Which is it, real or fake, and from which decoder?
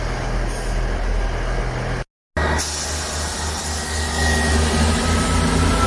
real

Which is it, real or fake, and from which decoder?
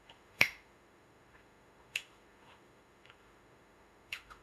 fake, autoencoder, DAC-VAE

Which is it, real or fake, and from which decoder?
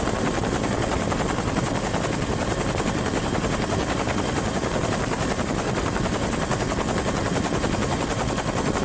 real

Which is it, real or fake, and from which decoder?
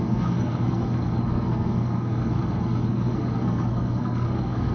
fake, codec, SNAC